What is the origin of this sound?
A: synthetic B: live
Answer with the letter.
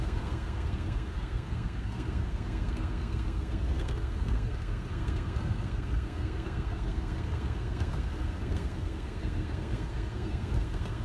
A